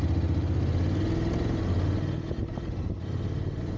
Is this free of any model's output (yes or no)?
yes